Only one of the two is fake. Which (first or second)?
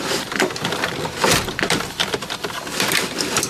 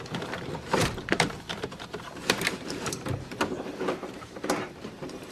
second